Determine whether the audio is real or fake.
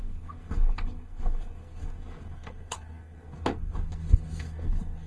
fake